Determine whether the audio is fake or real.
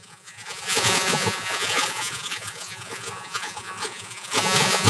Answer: fake